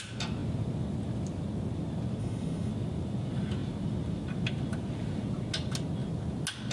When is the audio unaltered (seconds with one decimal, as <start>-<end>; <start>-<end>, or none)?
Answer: 0.0-2.2; 2.7-6.7